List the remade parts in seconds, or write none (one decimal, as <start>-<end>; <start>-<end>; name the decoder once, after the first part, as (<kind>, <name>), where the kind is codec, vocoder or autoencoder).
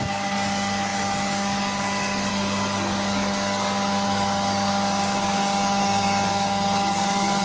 0.0-7.4 (codec, DAC)